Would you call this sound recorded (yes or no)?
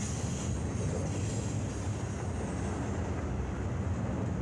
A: yes